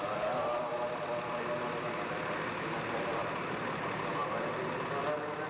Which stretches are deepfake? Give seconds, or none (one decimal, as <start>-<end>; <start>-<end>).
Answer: 0.5-3.3